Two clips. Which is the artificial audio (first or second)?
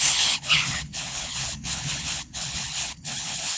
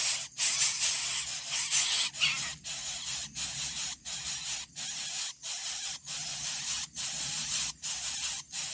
first